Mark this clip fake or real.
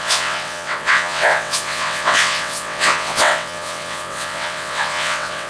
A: fake